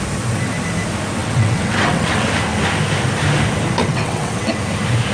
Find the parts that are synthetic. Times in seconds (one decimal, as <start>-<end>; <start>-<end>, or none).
1.2-2.3; 3.8-4.6